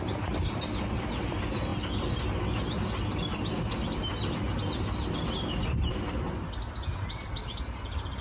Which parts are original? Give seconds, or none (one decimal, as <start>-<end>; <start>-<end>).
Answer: 0.0-8.2